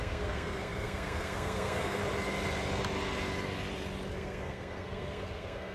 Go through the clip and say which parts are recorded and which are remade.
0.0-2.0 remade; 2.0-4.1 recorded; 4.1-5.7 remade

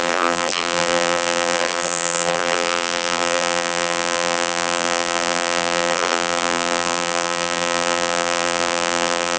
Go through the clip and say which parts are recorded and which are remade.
0.0-9.4 remade

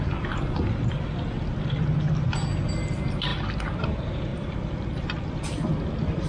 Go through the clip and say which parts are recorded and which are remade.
0.0-4.3 recorded; 4.3-5.2 remade; 5.2-6.3 recorded

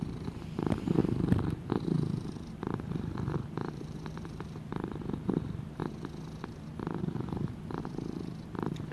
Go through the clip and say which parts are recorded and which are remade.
0.0-5.8 remade; 5.8-6.4 recorded; 6.4-8.9 remade

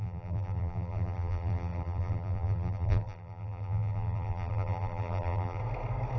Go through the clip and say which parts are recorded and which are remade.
0.0-5.6 remade; 5.6-6.2 recorded

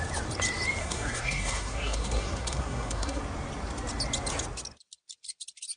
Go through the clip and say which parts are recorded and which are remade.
0.0-0.8 recorded; 0.8-3.2 remade; 3.2-5.8 recorded

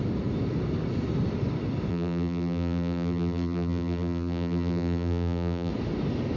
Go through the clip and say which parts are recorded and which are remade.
0.0-1.9 recorded; 1.9-5.7 remade; 5.7-6.4 recorded

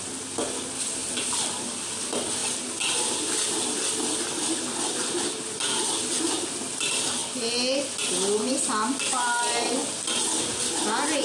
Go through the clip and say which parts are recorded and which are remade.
0.0-1.0 recorded; 1.0-2.0 remade; 2.0-11.2 recorded